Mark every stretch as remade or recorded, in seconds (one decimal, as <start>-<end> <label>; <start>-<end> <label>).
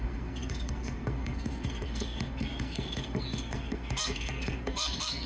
0.0-5.3 remade